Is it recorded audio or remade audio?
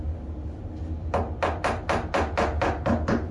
recorded